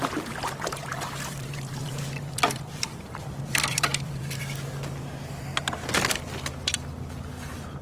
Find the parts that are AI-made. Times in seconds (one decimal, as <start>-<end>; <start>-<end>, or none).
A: 0.9-4.4